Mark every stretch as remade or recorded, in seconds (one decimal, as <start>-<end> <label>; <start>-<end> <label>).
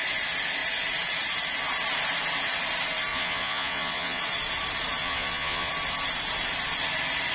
0.0-3.1 recorded; 3.1-4.2 remade; 4.2-5.0 recorded; 5.0-5.7 remade; 5.7-7.3 recorded